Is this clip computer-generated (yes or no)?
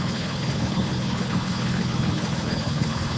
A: yes